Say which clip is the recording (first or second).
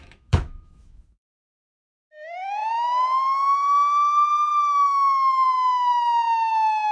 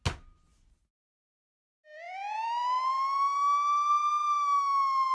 second